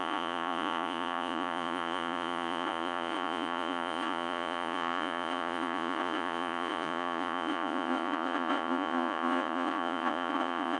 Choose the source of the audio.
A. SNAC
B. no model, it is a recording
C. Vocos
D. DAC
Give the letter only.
C